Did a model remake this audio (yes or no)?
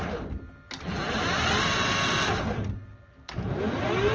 no